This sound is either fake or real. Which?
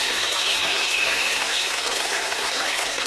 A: fake